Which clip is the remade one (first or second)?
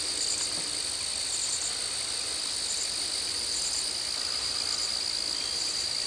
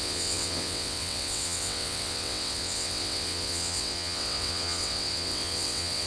second